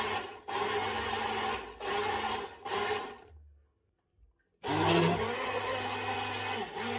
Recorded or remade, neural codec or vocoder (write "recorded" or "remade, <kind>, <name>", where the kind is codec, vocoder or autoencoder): recorded